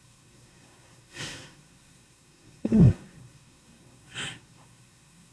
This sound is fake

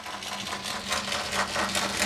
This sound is real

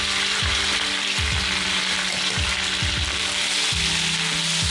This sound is real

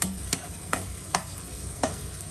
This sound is fake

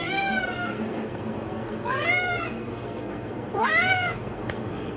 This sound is fake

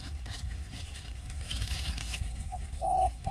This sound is fake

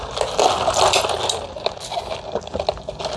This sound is real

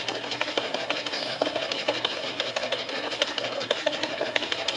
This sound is fake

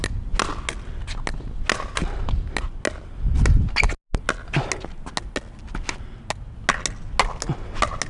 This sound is real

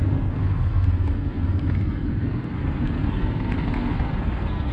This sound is fake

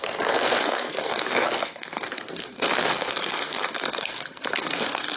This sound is fake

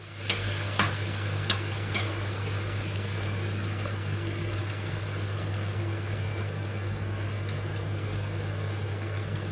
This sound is fake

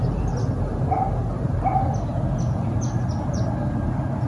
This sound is real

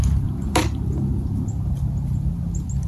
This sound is real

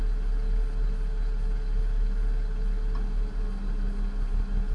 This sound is real